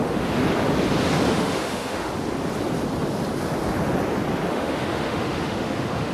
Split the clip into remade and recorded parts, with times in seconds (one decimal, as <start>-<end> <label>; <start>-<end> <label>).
0.0-0.4 remade; 0.4-1.3 recorded; 1.3-2.1 remade; 2.1-4.5 recorded; 4.5-6.1 remade